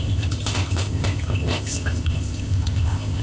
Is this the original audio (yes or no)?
no